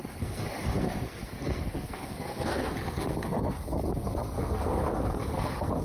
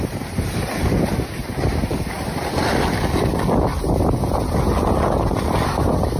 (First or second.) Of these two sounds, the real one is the second